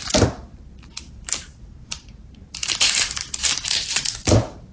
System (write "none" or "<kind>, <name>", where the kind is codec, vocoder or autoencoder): vocoder, BigVGAN v2